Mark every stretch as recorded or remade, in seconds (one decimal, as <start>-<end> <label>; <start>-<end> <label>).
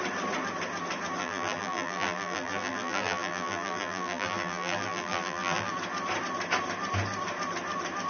0.0-1.2 recorded; 1.2-5.7 remade; 5.7-8.1 recorded